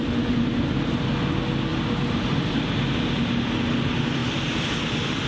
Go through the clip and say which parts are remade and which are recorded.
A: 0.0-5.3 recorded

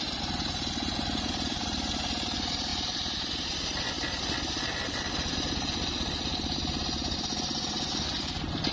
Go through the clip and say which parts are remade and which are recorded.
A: 0.0-8.7 recorded

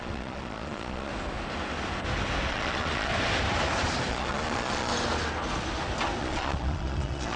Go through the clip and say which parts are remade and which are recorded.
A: 0.0-1.1 remade; 1.1-2.5 recorded; 2.5-3.1 remade; 3.1-4.1 recorded; 4.1-4.9 remade; 4.9-6.2 recorded; 6.2-7.4 remade

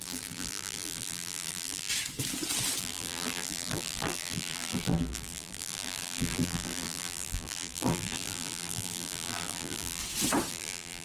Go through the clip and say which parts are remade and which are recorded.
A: 0.0-1.9 remade; 1.9-2.8 recorded; 2.8-10.0 remade; 10.0-10.5 recorded; 10.5-11.0 remade

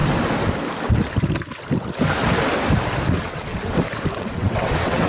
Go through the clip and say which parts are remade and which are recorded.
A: 0.0-3.1 recorded; 3.1-3.5 remade; 3.5-4.2 recorded; 4.2-5.1 remade

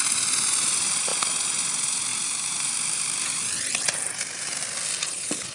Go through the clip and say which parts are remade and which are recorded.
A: 0.0-2.1 recorded; 2.1-4.5 remade; 4.5-5.5 recorded

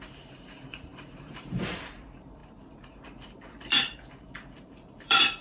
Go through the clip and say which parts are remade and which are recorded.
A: 0.0-5.4 remade

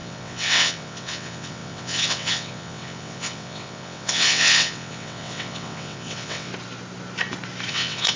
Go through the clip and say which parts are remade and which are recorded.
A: 0.0-6.5 remade; 6.5-7.7 recorded; 7.7-8.2 remade